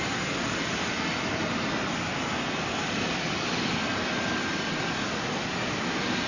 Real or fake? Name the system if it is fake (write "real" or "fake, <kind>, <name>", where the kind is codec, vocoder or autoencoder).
real